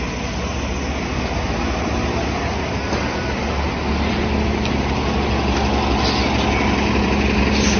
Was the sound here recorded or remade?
recorded